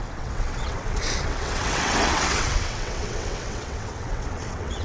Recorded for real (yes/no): no